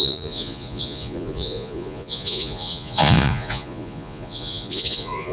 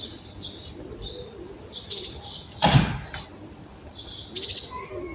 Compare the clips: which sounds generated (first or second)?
first